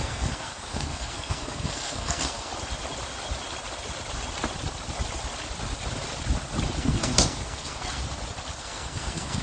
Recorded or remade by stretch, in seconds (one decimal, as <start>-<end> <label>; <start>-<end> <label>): 0.0-2.5 remade; 2.5-6.8 recorded; 6.8-8.0 remade; 8.0-8.6 recorded; 8.6-9.4 remade